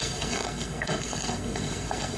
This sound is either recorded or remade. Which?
remade